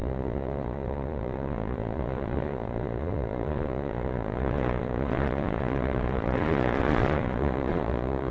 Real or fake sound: fake